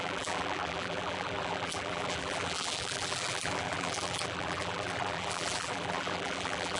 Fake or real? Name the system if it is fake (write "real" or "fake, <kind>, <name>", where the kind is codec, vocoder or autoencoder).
fake, vocoder, BigVGAN v2